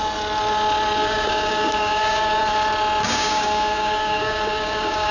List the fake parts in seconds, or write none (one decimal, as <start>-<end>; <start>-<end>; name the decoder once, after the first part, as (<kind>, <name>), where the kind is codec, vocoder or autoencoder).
1.0-2.4 (codec, DAC); 3.0-5.1